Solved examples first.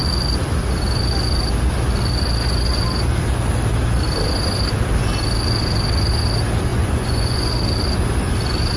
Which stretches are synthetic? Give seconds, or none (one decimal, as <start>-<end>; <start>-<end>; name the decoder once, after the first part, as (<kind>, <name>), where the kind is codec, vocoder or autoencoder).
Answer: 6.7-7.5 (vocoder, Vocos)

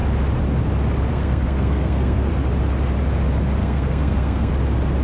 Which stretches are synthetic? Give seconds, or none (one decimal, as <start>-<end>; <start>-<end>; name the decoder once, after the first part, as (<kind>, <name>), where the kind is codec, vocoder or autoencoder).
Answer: 1.1-2.3 (codec, SNAC); 3.6-4.5

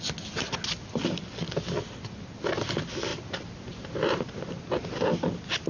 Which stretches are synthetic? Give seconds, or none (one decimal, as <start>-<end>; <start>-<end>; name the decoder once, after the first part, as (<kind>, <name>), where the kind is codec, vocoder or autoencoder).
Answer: 3.1-4.6 (vocoder, BigVGAN v2)

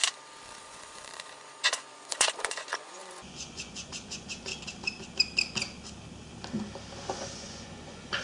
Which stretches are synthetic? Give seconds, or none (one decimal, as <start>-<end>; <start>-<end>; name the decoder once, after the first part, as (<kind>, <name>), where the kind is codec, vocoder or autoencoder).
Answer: 0.6-4.5 (vocoder, Vocos); 7.1-8.2

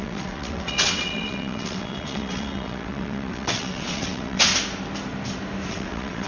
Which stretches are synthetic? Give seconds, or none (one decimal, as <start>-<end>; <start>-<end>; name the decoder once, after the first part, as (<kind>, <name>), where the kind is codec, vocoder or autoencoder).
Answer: 0.0-4.5 (vocoder, WaveNeXt); 5.7-6.3

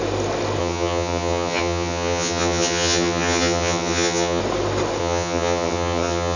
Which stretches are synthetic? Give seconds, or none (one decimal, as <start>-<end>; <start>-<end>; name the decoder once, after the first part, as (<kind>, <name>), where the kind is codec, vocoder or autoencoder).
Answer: 0.6-4.4 (vocoder, HiFi-GAN); 5.0-6.4

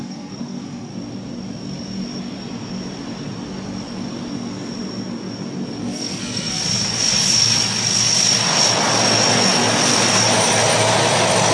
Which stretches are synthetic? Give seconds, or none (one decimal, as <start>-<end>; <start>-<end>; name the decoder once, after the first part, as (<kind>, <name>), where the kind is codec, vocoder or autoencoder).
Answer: 0.0-0.9 (codec, SNAC); 5.8-6.6

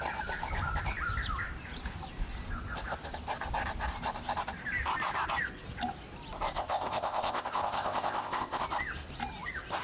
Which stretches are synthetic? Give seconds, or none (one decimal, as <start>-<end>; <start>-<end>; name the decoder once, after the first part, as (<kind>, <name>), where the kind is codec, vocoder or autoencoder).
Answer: 6.6-8.6 (codec, ZipCodec)